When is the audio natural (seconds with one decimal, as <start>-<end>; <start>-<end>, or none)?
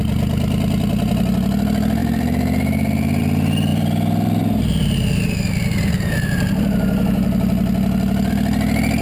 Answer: 0.0-2.0; 3.2-3.7; 8.3-9.0